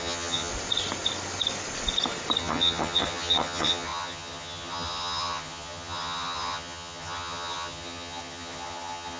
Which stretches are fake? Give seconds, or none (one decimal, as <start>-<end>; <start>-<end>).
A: 0.0-0.5; 2.4-9.2